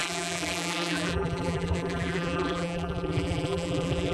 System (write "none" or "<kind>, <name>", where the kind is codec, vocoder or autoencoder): vocoder, BigVGAN v2